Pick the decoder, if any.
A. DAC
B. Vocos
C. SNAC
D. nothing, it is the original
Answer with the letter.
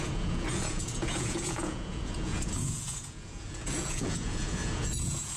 B